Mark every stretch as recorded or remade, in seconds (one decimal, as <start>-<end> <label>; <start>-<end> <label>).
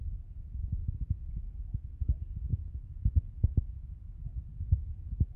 0.0-5.4 recorded